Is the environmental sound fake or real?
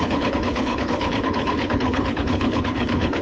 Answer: fake